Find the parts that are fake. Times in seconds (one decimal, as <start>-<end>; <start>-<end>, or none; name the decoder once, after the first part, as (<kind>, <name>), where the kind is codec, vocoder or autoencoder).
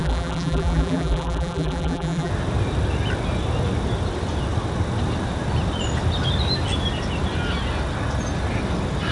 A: 0.0-2.3 (vocoder, BigVGAN v2)